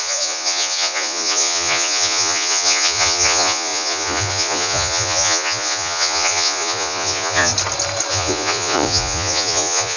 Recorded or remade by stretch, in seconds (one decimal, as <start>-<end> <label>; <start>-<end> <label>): 0.0-7.5 remade; 7.5-8.1 recorded; 8.1-10.0 remade